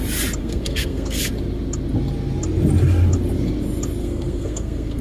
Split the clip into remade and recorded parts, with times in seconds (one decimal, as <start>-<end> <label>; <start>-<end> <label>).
0.0-0.4 recorded; 0.4-1.2 remade; 1.2-4.0 recorded; 4.0-5.0 remade